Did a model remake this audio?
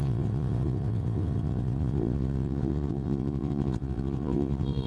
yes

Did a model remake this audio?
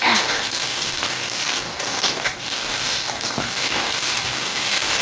yes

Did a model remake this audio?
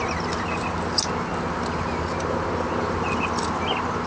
no